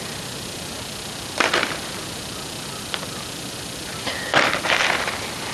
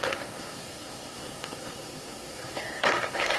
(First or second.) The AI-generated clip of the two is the second